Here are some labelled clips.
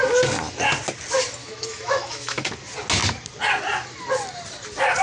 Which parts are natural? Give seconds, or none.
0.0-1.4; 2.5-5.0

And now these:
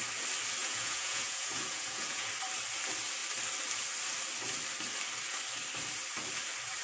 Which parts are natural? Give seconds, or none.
0.0-0.6; 2.3-6.8

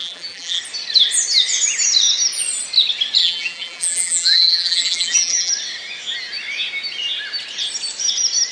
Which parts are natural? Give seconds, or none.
0.6-3.2; 5.5-8.5

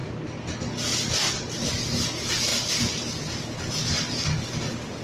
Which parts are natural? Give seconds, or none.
0.0-5.0

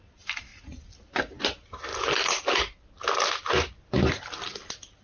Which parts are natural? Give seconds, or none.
0.0-5.0

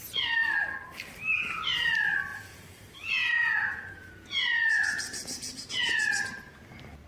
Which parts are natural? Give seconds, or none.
0.0-2.3; 5.7-7.1

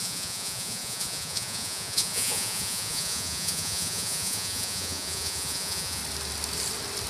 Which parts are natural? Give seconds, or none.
6.0-7.1

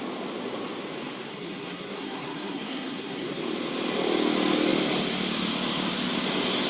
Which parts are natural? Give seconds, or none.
0.0-1.3; 3.4-6.7